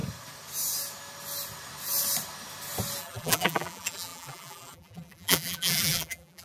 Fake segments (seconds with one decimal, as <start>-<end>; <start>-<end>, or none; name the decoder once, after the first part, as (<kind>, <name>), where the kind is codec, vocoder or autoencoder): 3.0-6.4 (vocoder, BigVGAN v2)

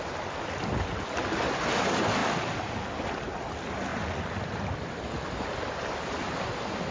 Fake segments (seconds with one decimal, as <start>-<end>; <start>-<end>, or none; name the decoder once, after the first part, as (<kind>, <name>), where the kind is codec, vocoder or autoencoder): none

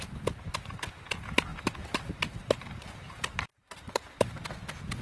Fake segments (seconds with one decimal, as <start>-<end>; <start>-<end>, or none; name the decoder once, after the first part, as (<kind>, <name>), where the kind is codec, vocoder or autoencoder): 1.5-4.4 (vocoder, BigVGAN v2)

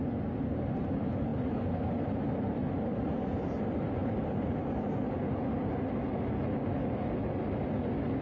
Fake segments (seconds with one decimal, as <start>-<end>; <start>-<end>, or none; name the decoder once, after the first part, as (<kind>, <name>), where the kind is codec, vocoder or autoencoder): 4.0-5.0 (vocoder, BigVGAN v2)

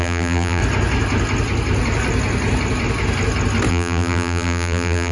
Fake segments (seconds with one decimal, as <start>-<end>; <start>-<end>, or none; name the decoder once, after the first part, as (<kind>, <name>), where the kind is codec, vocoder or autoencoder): 0.0-0.6 (vocoder, BigVGAN v2); 3.7-5.1

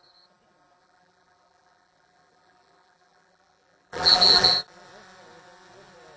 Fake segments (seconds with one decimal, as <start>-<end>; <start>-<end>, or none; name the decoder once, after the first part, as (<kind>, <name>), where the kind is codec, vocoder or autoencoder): 0.8-4.5 (vocoder, BigVGAN v2)

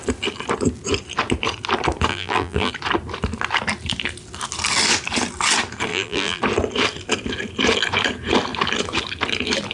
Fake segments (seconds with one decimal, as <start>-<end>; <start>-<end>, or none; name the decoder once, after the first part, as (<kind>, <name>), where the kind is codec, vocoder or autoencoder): 2.1-2.7 (vocoder, BigVGAN v2); 5.9-6.4

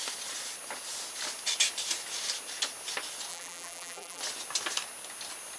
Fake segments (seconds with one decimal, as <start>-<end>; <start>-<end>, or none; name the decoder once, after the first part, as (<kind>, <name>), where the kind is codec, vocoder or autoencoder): 3.3-4.2 (vocoder, BigVGAN v2)